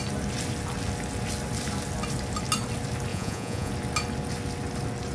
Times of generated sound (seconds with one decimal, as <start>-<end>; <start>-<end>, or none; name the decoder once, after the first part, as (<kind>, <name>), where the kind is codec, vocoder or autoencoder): 3.1-3.7 (vocoder, Vocos)